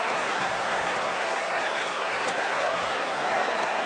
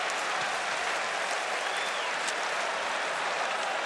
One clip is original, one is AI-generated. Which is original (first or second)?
second